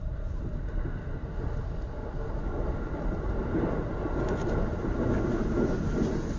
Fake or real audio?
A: real